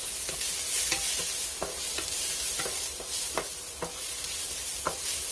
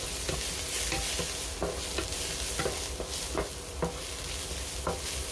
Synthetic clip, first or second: first